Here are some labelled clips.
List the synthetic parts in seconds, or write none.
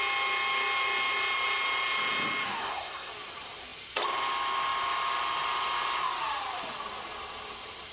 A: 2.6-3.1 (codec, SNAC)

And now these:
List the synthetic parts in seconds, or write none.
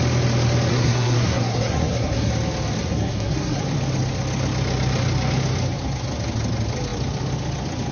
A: 0.7-2.3 (codec, SNAC); 2.8-3.6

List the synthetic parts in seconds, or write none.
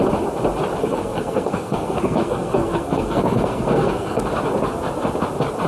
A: 0.8-4.2 (codec, SNAC)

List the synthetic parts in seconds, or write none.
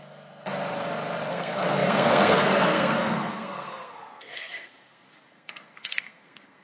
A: 0.0-0.5 (codec, SNAC); 1.3-6.6